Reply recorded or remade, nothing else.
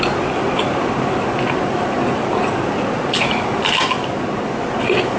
recorded